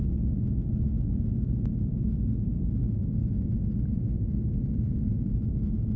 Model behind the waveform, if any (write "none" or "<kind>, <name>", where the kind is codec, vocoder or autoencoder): none